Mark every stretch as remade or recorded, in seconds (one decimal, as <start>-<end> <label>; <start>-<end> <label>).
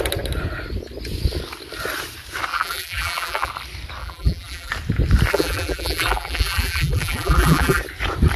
0.0-2.5 recorded; 2.5-3.5 remade; 3.5-4.0 recorded; 4.0-4.7 remade; 4.7-5.3 recorded; 5.3-7.8 remade; 7.8-8.4 recorded